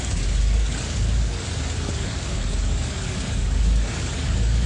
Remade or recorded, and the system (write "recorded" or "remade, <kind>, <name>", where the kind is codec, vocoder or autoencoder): remade, codec, DAC